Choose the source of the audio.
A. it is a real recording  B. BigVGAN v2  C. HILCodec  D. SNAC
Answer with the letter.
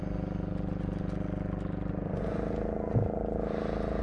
A